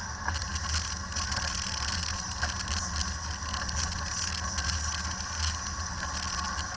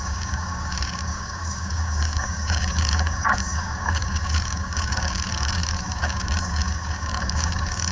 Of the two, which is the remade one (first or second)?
second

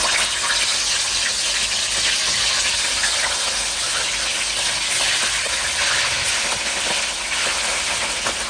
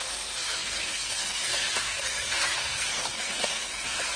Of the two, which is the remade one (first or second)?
second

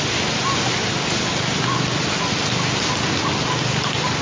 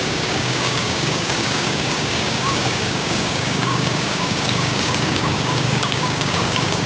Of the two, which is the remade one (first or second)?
second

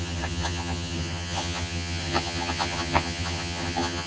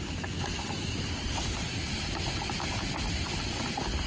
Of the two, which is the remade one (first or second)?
first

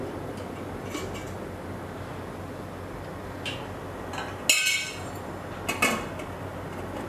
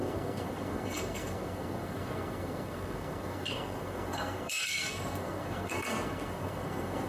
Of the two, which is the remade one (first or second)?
second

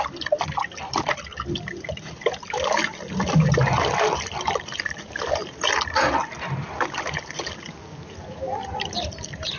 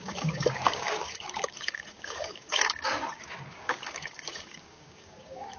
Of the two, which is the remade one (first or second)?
second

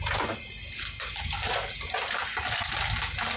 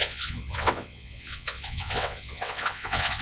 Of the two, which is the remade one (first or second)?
second